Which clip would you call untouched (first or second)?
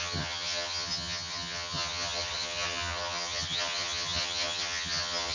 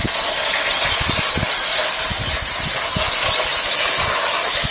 second